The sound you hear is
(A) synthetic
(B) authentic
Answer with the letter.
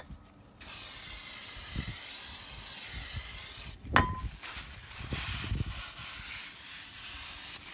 B